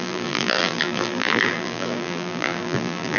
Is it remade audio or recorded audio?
remade